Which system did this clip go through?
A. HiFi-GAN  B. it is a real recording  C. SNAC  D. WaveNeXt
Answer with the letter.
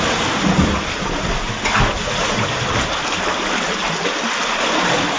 B